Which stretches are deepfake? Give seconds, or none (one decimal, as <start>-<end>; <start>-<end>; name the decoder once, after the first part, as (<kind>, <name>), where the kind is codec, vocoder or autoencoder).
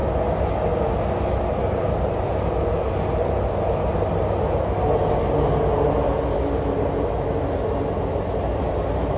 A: none